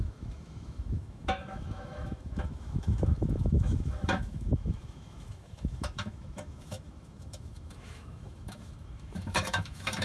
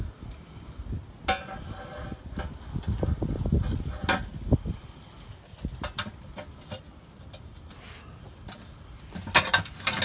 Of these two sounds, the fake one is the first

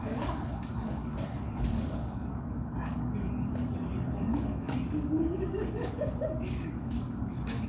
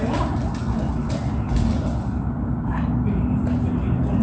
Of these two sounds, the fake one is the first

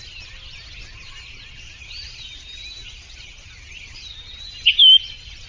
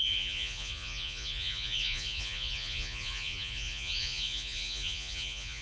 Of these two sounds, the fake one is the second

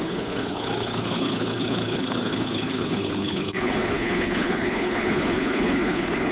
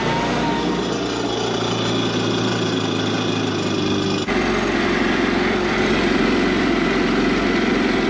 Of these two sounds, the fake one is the first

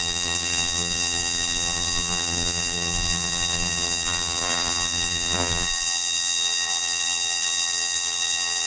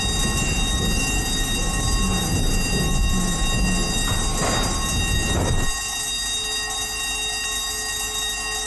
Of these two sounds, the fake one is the first